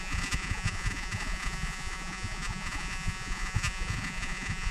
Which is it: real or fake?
fake